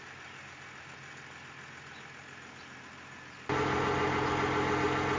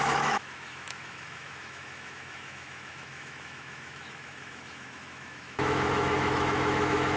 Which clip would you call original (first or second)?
first